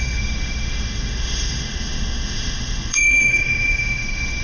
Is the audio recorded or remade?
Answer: remade